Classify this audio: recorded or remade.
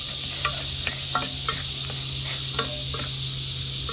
recorded